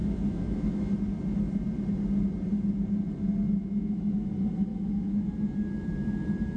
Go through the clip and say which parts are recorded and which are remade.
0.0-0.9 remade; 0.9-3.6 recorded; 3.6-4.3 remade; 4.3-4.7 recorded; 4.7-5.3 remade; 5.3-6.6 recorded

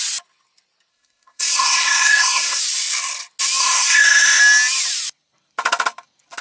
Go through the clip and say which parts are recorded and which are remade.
0.0-0.9 recorded; 0.9-2.6 remade; 2.6-3.6 recorded; 3.6-4.4 remade; 4.4-6.4 recorded

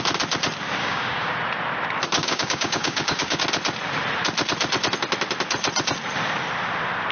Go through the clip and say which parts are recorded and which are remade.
0.0-0.8 recorded; 0.8-1.3 remade; 1.3-2.2 recorded; 2.2-3.4 remade; 3.4-7.1 recorded

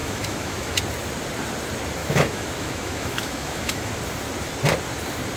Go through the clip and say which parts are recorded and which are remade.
0.0-0.8 remade; 0.8-2.0 recorded; 2.0-3.9 remade; 3.9-5.4 recorded